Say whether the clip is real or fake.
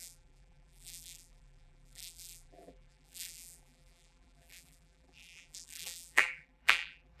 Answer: fake